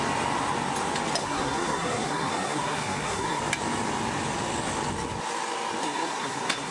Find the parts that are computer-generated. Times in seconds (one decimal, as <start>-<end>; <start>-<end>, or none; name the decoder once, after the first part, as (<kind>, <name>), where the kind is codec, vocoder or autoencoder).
1.2-3.4 (codec, SNAC); 5.8-6.7